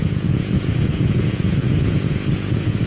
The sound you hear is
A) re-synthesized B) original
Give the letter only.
A